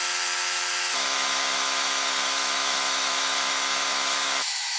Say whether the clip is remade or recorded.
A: remade